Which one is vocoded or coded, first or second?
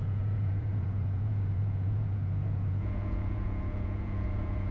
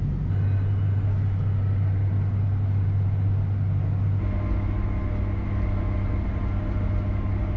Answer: first